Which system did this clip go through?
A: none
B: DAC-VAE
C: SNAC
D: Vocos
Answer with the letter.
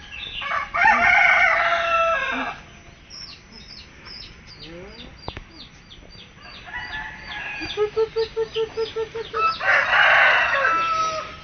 A